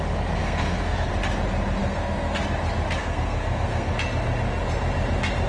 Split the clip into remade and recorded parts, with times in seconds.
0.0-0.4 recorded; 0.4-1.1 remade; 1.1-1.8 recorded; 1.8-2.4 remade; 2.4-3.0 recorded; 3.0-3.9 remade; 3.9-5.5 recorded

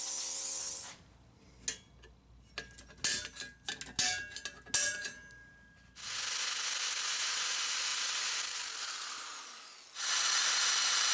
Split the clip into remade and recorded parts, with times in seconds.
0.0-11.1 recorded

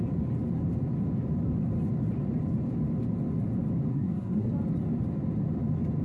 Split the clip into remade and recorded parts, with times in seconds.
0.0-3.9 recorded; 3.9-4.5 remade; 4.5-6.0 recorded

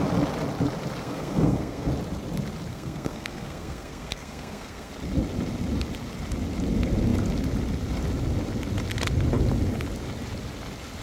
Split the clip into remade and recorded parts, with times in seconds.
0.0-1.0 recorded; 1.0-1.9 remade; 1.9-2.7 recorded; 2.7-4.9 remade; 4.9-11.0 recorded

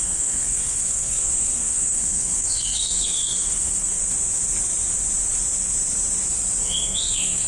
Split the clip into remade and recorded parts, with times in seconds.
0.0-4.0 remade; 4.0-6.6 recorded; 6.6-7.5 remade

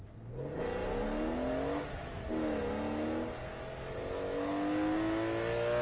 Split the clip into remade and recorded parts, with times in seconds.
0.0-5.8 recorded

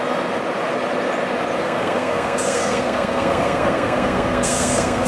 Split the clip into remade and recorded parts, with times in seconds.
0.0-1.6 recorded; 1.6-5.1 remade